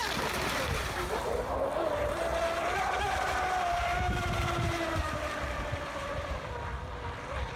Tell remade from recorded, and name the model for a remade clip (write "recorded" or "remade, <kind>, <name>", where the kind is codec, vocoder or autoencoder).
recorded